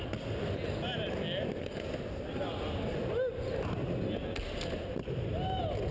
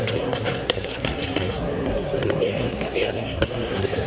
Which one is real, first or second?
first